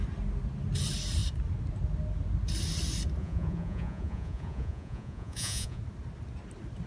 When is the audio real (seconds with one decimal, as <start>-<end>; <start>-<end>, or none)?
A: 0.0-3.2; 5.8-6.9